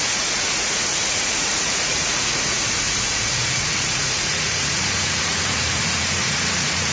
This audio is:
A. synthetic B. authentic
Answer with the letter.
A